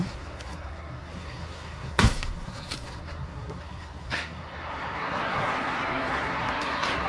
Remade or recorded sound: remade